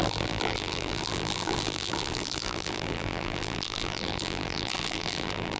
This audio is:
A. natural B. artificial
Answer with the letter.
B